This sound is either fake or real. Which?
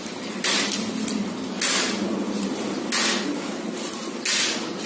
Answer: real